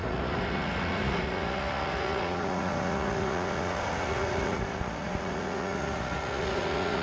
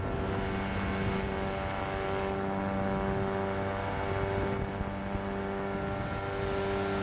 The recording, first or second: second